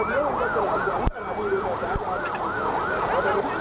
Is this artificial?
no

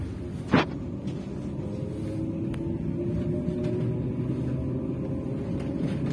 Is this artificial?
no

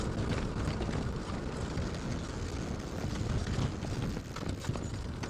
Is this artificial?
no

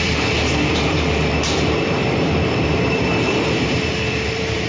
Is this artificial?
yes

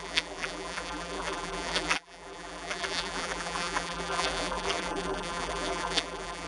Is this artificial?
yes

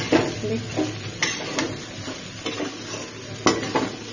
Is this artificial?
no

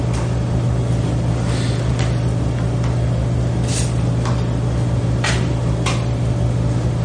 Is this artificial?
no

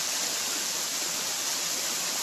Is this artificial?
no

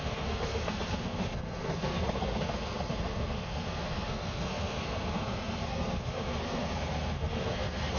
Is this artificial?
yes